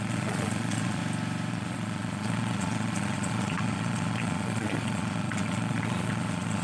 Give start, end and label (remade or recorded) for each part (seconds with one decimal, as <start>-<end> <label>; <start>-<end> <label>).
0.0-1.0 remade; 1.0-1.5 recorded; 1.5-6.6 remade